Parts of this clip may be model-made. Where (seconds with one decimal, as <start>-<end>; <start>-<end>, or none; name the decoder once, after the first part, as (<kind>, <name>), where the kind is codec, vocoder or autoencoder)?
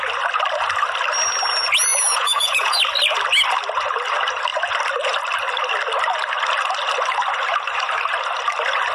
1.9-2.8 (vocoder, Vocos)